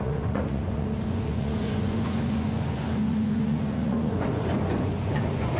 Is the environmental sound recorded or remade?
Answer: remade